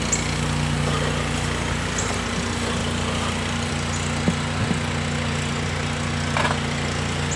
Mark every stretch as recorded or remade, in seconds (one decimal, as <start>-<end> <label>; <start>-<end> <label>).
0.0-7.4 recorded

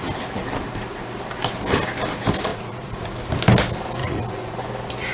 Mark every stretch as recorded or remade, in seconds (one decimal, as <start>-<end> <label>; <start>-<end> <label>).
0.0-2.5 recorded; 2.5-3.1 remade; 3.1-4.0 recorded; 4.0-4.6 remade; 4.6-5.1 recorded